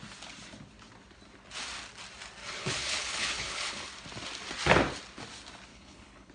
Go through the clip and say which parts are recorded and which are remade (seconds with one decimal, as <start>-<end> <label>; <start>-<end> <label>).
0.0-2.4 recorded; 2.4-3.9 remade; 3.9-5.7 recorded; 5.7-6.3 remade